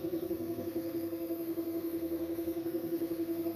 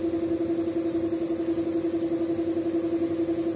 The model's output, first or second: first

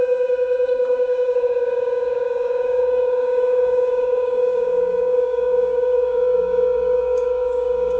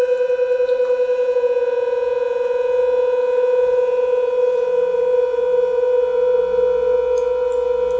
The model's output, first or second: first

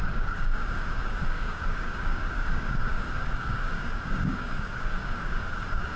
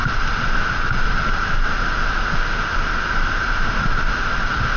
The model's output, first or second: first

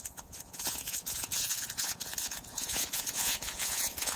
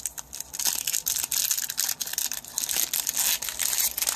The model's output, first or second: first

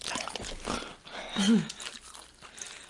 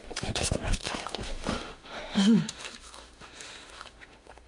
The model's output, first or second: second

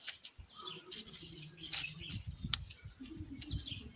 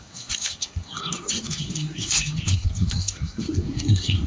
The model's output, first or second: second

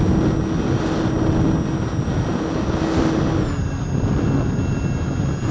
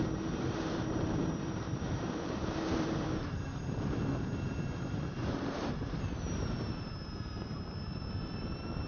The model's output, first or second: second